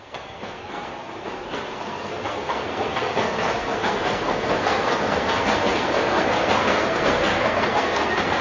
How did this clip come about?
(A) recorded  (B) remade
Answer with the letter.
B